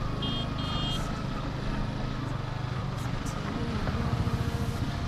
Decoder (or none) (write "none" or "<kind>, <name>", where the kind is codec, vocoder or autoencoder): none